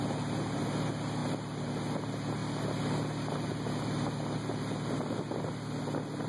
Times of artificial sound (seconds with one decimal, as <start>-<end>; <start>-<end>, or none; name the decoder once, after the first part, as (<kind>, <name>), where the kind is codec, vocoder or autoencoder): none